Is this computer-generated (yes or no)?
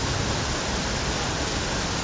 no